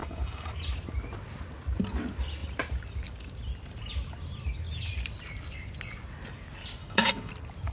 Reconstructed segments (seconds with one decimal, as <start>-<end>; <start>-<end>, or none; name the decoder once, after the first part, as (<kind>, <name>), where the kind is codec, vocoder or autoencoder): 0.0-0.5 (codec, DAC); 6.8-7.3